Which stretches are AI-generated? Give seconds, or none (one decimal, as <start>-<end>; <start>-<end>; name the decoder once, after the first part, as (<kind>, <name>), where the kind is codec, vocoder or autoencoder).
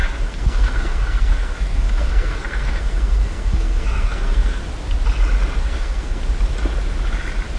0.0-4.6 (codec, SNAC); 5.6-6.2